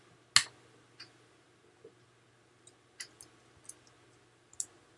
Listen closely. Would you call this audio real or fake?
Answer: real